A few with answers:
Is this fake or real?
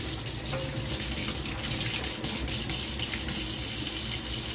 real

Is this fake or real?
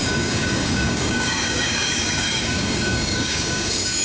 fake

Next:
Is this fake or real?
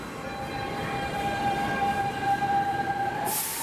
fake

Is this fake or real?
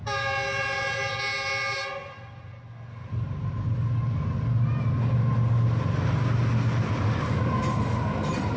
real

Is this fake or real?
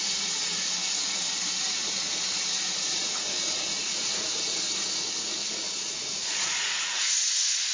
fake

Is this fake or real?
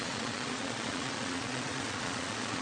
fake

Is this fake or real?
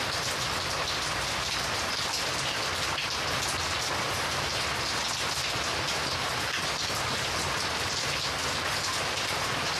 real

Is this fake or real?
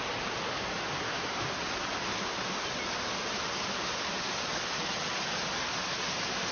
real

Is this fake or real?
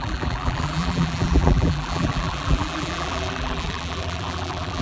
fake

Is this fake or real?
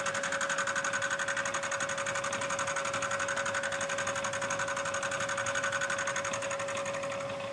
real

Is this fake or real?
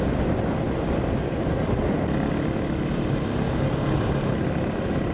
real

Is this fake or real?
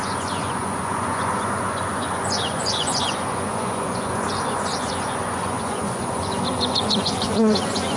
fake